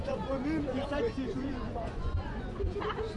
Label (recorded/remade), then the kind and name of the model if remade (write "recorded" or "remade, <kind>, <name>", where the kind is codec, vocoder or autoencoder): remade, vocoder, Vocos